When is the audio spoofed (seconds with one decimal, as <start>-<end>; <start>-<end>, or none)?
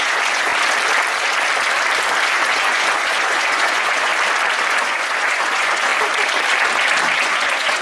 0.0-0.5; 2.3-4.1; 4.7-5.9; 7.2-7.8